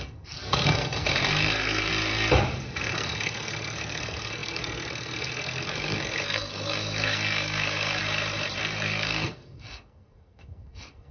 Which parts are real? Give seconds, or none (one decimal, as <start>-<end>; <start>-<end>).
1.9-2.8; 8.0-8.6